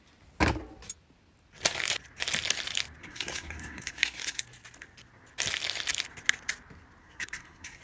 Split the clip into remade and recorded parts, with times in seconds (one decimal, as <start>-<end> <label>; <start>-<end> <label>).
0.0-3.0 recorded; 3.0-4.4 remade; 4.4-7.0 recorded; 7.0-7.8 remade